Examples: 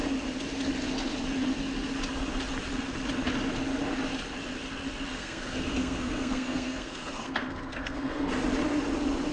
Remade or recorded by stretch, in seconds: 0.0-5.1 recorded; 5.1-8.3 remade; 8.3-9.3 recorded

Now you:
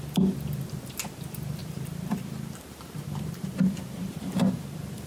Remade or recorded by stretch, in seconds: 0.0-1.6 recorded; 1.6-5.1 remade

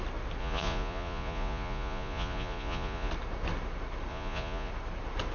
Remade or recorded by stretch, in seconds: 0.0-0.4 recorded; 0.4-3.1 remade; 3.1-4.1 recorded; 4.1-4.7 remade; 4.7-5.3 recorded

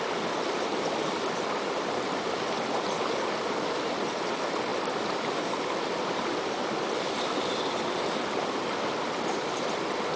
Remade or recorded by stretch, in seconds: 0.0-10.2 recorded

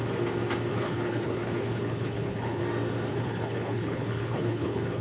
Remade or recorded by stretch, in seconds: 0.0-0.7 recorded; 0.7-2.6 remade; 2.6-3.1 recorded; 3.1-5.0 remade

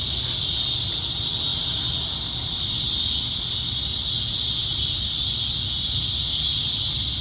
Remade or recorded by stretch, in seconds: 0.0-7.2 recorded

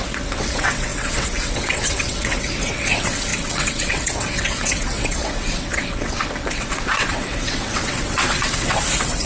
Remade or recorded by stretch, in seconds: 0.0-9.3 remade

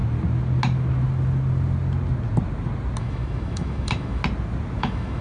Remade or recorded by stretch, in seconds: 0.0-3.0 recorded; 3.0-4.2 remade; 4.2-4.8 recorded; 4.8-5.2 remade